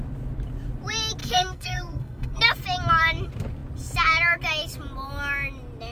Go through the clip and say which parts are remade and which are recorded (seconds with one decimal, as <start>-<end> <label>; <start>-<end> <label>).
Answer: 0.0-1.2 recorded; 1.2-2.4 remade; 2.4-5.9 recorded